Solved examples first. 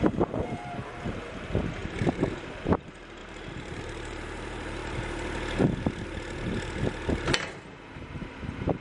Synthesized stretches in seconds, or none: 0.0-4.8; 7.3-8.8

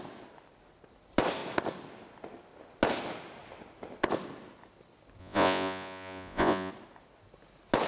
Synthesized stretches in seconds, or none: 5.2-6.7

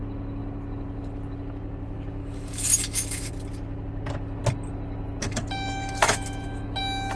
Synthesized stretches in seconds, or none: 2.2-3.3; 5.2-6.8

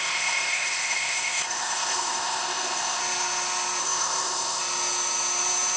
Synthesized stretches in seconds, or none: 0.0-3.0; 3.8-4.6

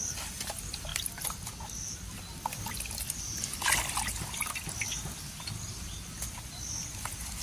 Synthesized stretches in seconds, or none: none

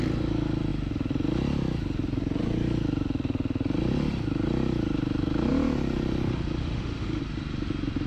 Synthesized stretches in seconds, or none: 6.6-7.2

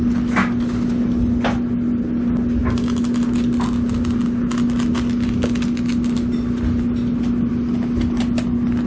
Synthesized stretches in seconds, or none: none